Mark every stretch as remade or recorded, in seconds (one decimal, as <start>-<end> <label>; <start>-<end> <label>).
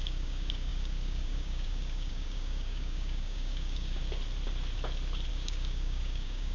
0.0-4.0 remade; 4.0-5.3 recorded; 5.3-6.5 remade